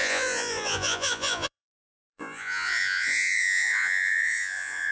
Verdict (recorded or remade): remade